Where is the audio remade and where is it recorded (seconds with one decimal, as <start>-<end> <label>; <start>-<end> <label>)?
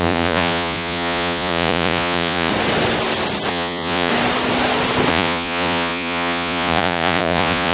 0.0-2.5 remade; 2.5-3.5 recorded; 3.5-4.1 remade; 4.1-5.1 recorded; 5.1-7.7 remade